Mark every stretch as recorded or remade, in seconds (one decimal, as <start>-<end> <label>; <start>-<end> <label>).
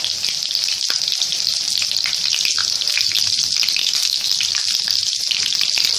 0.0-3.8 recorded; 3.8-4.3 remade; 4.3-6.0 recorded